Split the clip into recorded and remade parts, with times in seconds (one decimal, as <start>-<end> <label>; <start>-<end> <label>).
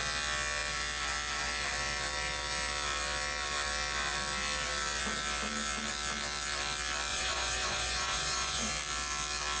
0.0-7.1 recorded; 7.1-8.7 remade; 8.7-9.6 recorded